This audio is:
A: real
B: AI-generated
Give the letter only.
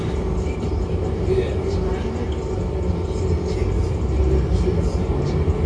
A